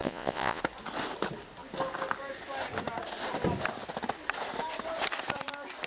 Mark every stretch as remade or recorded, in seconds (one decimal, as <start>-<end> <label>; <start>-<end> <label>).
0.0-0.6 remade; 0.6-5.9 recorded